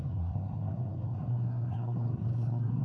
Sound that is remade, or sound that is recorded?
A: remade